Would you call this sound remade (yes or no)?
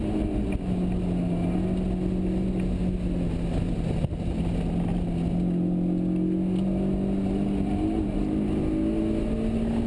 no